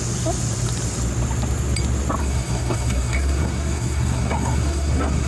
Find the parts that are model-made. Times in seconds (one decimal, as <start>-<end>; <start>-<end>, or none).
2.2-5.3